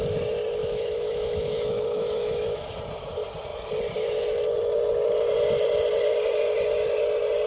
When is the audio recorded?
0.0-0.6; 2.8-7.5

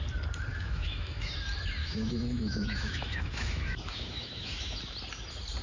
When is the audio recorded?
0.0-0.5; 1.3-1.8; 4.8-5.6

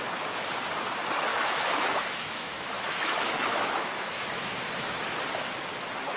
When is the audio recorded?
0.0-1.3; 5.0-6.2